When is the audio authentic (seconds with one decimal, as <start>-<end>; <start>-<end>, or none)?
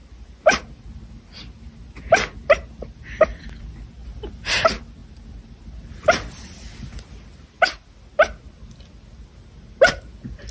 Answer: 0.0-10.5